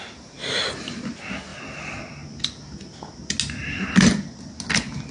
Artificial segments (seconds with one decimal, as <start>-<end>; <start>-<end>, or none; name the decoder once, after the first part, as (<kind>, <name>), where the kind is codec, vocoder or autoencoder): none